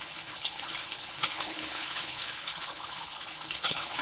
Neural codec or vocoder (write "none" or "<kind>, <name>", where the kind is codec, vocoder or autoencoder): codec, HILCodec